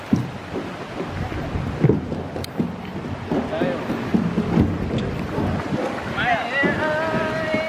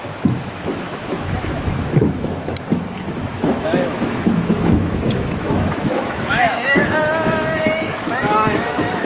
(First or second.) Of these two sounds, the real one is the first